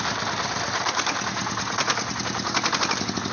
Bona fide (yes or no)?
yes